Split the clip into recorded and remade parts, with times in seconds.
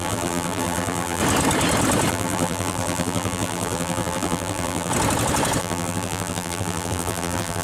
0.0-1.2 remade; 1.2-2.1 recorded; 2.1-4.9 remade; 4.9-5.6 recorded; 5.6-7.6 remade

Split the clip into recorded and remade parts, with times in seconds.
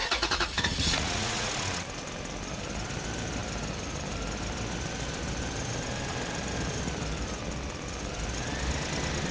0.0-1.5 remade; 1.5-9.3 recorded